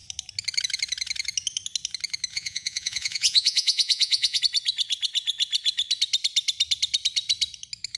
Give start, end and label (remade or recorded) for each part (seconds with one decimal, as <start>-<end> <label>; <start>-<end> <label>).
0.0-2.3 recorded; 2.3-4.4 remade; 4.4-8.0 recorded